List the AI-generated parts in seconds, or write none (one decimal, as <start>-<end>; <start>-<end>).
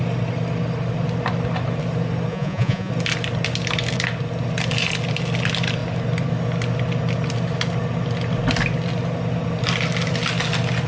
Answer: 2.3-2.9